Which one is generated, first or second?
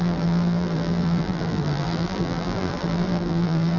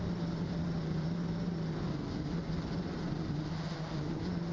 first